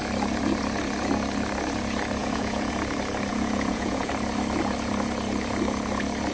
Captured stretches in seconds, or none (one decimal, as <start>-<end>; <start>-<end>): 0.0-2.2; 2.7-3.3; 4.1-6.3